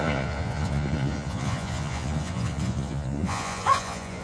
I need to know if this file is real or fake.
fake